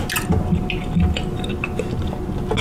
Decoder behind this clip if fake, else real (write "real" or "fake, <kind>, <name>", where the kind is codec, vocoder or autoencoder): real